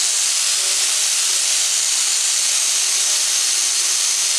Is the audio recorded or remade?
recorded